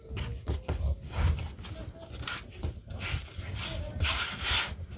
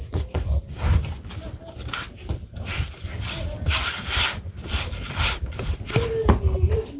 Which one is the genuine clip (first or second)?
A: first